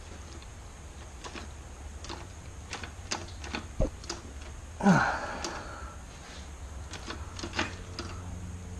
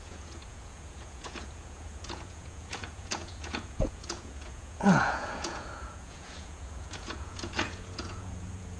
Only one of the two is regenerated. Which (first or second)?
second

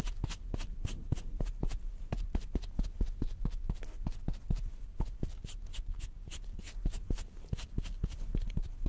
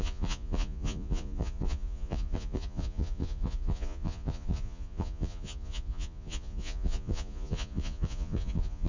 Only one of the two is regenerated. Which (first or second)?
second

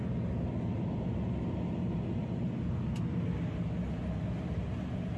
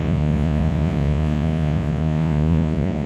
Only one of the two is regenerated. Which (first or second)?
second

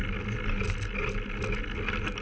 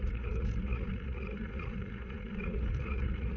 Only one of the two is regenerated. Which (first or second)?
second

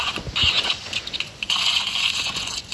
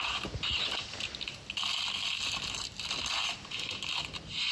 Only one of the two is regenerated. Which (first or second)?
first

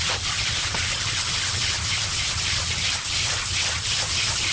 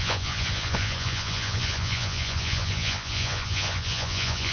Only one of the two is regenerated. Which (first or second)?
second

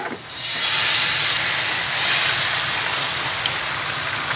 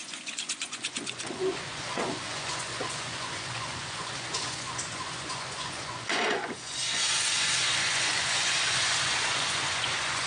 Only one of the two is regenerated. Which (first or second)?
second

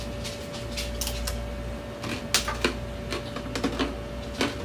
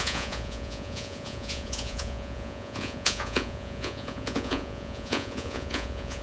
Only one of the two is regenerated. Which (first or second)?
second